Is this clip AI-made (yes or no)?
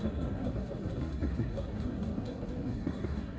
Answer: yes